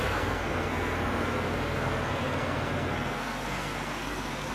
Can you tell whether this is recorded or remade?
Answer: remade